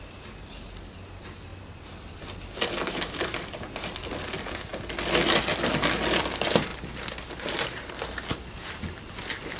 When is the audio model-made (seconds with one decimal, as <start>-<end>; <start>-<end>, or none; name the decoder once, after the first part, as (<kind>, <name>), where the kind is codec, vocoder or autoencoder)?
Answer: none